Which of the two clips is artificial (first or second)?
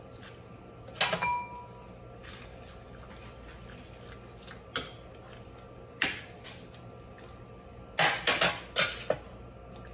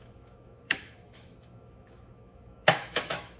second